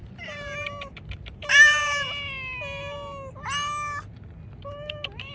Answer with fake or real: real